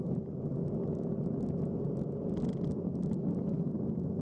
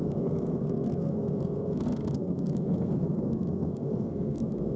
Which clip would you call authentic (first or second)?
first